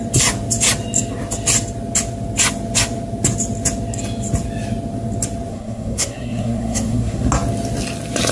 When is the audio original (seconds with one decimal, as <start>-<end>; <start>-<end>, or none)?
0.0-5.5; 7.3-8.3